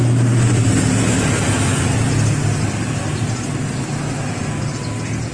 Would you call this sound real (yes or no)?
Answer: yes